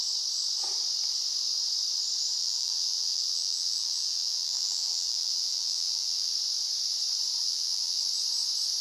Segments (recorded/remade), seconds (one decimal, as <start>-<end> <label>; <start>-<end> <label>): 0.0-2.4 recorded; 2.4-6.3 remade; 6.3-7.4 recorded; 7.4-8.0 remade; 8.0-8.8 recorded